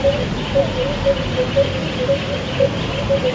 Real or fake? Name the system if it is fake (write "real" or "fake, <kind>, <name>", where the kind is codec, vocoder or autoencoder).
real